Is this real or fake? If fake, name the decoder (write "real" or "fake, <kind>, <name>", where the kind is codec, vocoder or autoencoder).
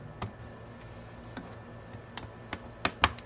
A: real